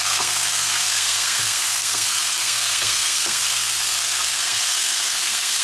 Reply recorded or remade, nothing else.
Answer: remade